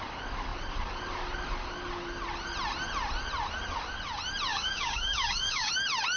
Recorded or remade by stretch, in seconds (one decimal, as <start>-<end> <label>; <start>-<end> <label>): 0.0-4.5 recorded; 4.5-5.7 remade; 5.7-6.2 recorded